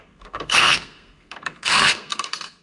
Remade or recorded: remade